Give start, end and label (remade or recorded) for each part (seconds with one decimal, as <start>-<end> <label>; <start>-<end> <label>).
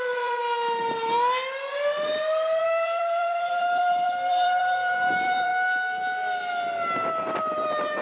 0.0-0.4 remade; 0.4-2.6 recorded; 2.6-5.5 remade; 5.5-7.5 recorded; 7.5-8.0 remade